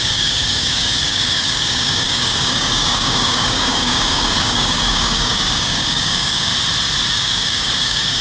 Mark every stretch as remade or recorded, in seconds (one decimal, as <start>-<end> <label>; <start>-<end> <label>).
0.0-6.5 remade; 6.5-7.1 recorded; 7.1-8.2 remade

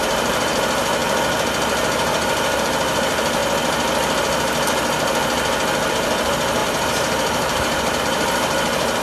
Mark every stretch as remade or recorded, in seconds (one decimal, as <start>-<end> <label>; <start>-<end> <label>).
0.0-1.0 remade; 1.0-2.6 recorded; 2.6-3.4 remade; 3.4-5.9 recorded; 5.9-9.0 remade

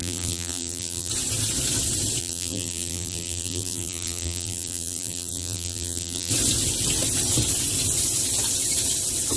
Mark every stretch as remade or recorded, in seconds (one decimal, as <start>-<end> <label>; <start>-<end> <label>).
0.0-1.1 remade; 1.1-2.2 recorded; 2.2-6.3 remade; 6.3-9.4 recorded

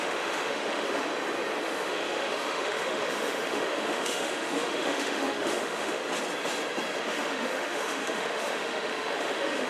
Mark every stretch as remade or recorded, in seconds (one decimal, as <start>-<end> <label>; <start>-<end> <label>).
0.0-1.1 remade; 1.1-1.6 recorded; 1.6-6.0 remade; 6.0-7.0 recorded; 7.0-9.7 remade

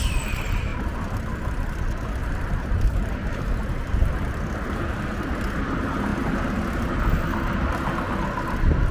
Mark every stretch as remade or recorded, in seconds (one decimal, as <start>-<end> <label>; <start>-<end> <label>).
0.0-2.2 recorded; 2.2-4.1 remade; 4.1-8.9 recorded

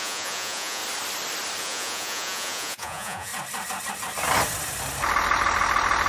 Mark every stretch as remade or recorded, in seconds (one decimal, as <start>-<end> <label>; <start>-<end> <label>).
0.0-0.8 remade; 0.8-1.6 recorded; 1.6-3.3 remade; 3.3-6.1 recorded

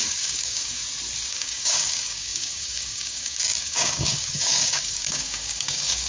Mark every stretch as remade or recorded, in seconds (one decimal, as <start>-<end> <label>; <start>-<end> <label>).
0.0-0.8 remade; 0.8-1.3 recorded; 1.3-6.1 remade

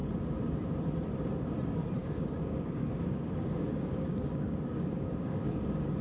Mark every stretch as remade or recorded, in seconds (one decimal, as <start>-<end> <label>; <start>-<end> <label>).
0.0-2.0 recorded; 2.0-5.6 remade; 5.6-6.0 recorded